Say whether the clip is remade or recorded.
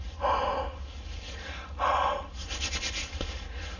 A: recorded